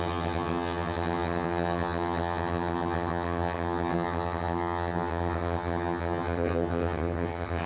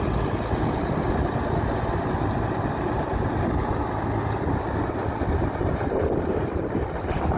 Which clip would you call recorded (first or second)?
second